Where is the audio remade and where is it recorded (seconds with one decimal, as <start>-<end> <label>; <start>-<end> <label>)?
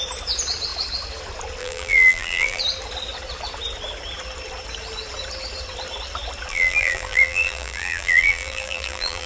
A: 0.0-1.6 recorded; 1.6-2.6 remade; 2.6-6.5 recorded; 6.5-9.3 remade